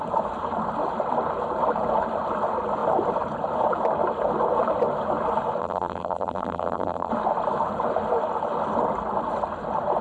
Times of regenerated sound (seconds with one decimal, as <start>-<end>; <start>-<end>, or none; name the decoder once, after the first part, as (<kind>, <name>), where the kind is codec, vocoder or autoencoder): 5.6-7.1 (vocoder, BigVGAN v2)